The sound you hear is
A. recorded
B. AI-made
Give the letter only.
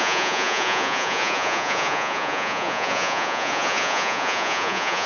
B